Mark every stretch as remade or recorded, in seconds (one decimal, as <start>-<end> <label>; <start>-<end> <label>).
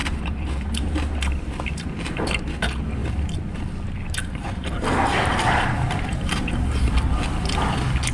0.0-2.4 remade; 2.4-3.0 recorded; 3.0-3.6 remade; 3.6-4.2 recorded; 4.2-6.5 remade; 6.5-8.1 recorded